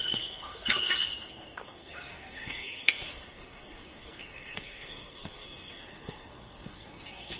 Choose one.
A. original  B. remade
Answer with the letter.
B